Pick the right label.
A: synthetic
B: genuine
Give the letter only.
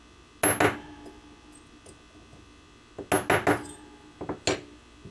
B